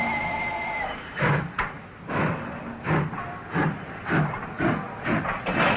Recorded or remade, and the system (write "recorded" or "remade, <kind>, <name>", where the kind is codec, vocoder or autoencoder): recorded